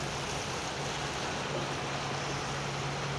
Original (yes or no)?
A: yes